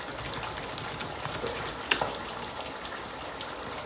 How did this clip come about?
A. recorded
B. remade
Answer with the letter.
A